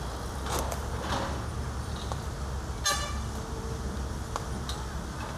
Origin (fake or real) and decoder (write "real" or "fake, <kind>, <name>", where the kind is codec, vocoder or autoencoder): real